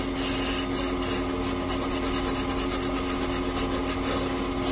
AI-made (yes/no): no